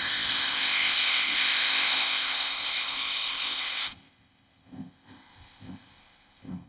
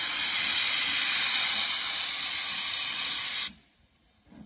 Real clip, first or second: second